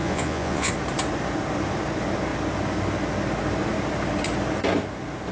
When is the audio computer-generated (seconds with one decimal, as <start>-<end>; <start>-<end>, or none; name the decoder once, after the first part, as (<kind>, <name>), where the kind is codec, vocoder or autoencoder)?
0.0-0.7 (vocoder, Vocos)